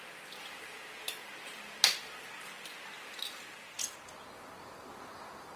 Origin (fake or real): real